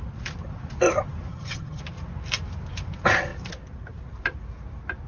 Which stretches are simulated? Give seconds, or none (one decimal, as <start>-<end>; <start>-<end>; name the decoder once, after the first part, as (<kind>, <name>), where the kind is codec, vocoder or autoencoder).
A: 1.3-1.8 (vocoder, HiFi-GAN)